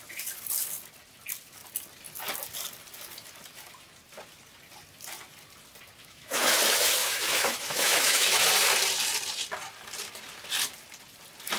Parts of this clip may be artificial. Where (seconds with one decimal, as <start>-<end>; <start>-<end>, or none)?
6.0-6.5; 7.0-8.4

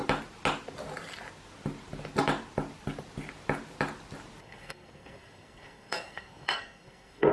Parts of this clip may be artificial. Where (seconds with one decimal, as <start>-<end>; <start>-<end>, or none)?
4.4-7.3